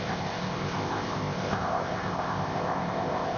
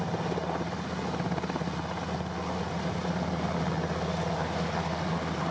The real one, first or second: second